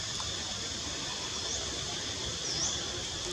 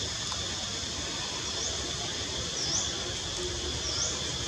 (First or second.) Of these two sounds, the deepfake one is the first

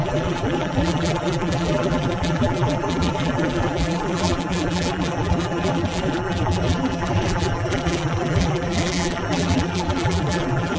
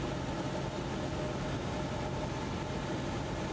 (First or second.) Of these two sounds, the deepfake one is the first